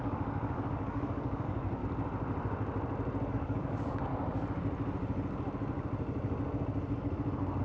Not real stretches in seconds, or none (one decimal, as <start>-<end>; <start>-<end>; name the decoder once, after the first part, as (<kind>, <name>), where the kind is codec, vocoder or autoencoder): 0.0-1.8 (codec, DAC); 3.3-4.1